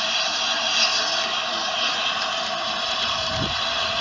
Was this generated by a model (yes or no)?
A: no